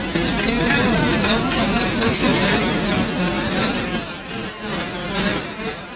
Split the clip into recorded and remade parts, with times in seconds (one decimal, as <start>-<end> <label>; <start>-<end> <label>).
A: 0.0-6.0 recorded